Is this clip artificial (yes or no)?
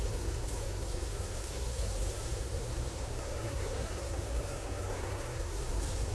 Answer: yes